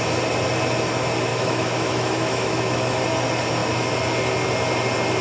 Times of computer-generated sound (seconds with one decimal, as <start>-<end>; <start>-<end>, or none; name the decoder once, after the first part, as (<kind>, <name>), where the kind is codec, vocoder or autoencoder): 1.3-3.0 (autoencoder, DAC-VAE)